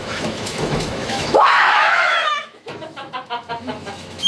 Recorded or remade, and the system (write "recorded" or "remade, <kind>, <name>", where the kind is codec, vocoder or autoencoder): remade, autoencoder, DAC-VAE